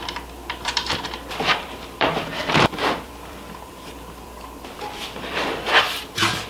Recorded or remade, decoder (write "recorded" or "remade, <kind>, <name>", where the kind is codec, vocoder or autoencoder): remade, vocoder, BigVGAN v2